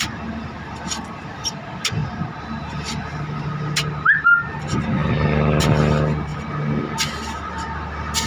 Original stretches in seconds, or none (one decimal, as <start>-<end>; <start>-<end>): 0.0-8.3